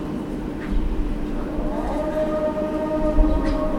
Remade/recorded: remade